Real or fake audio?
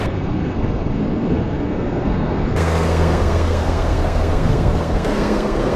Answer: fake